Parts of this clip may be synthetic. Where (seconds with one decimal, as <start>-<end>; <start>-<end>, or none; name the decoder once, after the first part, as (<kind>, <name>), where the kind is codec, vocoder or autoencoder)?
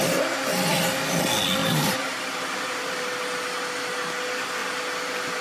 1.6-3.1 (vocoder, BigVGAN v2)